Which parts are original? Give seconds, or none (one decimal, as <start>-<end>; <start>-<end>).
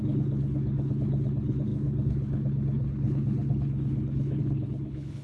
none